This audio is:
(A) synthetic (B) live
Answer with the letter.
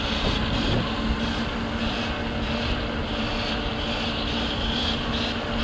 B